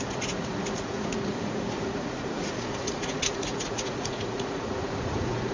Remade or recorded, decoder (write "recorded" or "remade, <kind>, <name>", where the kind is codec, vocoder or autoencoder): remade, vocoder, Vocos